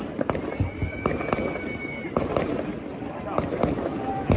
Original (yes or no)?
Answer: yes